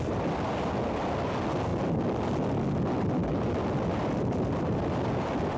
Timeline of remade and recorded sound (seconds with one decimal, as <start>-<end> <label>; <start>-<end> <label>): 0.0-5.6 recorded